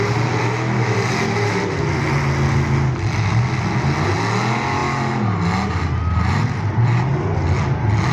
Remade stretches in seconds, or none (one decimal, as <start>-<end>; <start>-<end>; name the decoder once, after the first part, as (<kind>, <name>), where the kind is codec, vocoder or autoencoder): none